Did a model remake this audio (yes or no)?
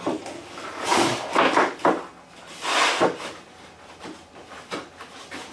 no